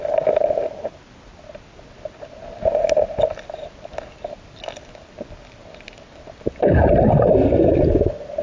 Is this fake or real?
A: real